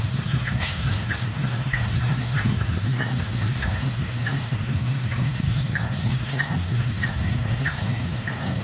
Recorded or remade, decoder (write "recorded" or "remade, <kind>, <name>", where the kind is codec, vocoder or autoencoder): remade, codec, SNAC